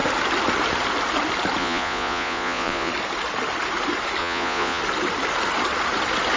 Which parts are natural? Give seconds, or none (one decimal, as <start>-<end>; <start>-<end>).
0.0-1.6; 2.9-4.2; 4.8-6.4